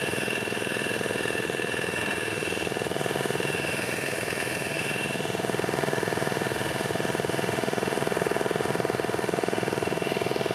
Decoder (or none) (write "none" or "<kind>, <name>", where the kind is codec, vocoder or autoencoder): autoencoder, DAC-VAE